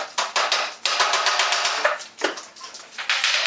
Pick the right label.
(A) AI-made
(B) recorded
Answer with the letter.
B